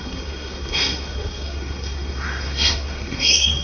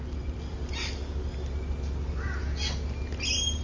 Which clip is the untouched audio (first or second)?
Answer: second